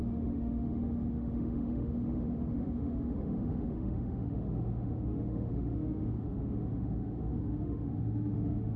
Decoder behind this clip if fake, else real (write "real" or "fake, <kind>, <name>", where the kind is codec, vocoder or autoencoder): fake, autoencoder, DAC-VAE